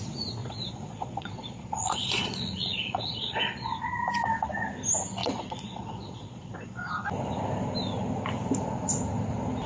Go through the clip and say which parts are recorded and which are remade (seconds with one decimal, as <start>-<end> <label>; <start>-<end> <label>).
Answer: 0.0-0.4 recorded; 0.4-3.7 remade; 3.7-5.2 recorded; 5.2-6.9 remade; 6.9-9.7 recorded